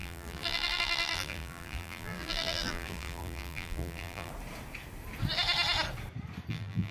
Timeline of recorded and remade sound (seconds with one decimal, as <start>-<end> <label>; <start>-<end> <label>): 0.0-4.3 remade; 4.3-6.5 recorded; 6.5-6.9 remade